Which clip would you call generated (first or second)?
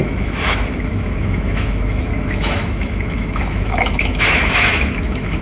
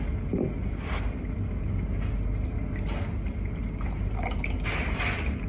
first